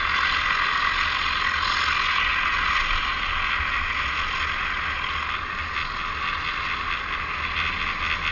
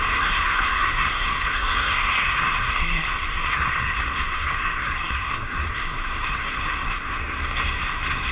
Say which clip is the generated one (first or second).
second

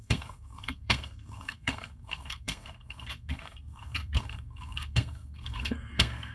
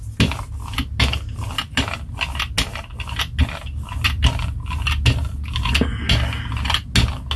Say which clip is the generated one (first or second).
first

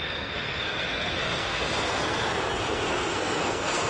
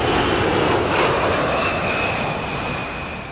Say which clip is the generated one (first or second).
first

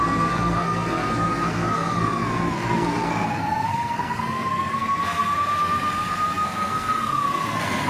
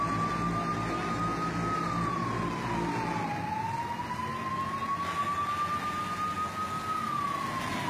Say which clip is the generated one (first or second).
first